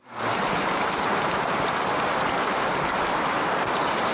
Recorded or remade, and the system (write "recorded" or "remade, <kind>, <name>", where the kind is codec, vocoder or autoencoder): recorded